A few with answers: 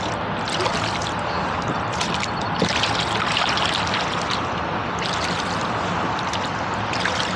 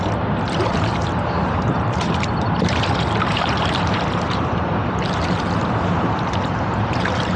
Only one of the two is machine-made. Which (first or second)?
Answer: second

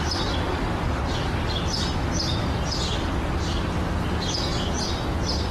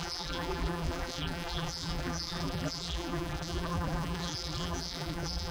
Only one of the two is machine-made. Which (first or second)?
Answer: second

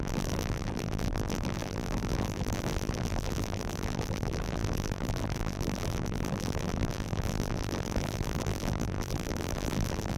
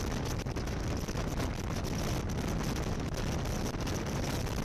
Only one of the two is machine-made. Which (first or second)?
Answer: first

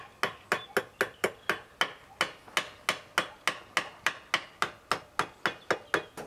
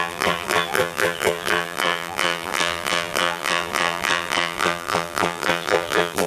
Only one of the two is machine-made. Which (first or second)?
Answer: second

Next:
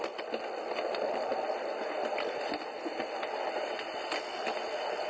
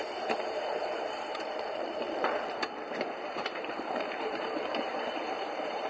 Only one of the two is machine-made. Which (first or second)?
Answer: second